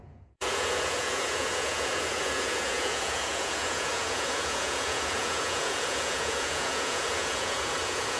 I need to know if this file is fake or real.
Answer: fake